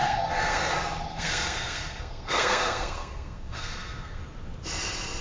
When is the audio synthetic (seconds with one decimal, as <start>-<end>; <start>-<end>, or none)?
0.0-0.7; 1.1-4.2